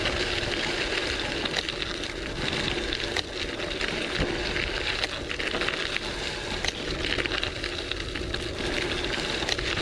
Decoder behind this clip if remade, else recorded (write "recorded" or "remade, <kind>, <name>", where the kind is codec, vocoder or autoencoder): recorded